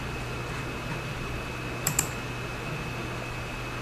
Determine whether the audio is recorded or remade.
recorded